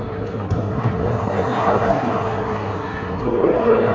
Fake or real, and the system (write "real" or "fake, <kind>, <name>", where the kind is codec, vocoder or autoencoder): fake, codec, SNAC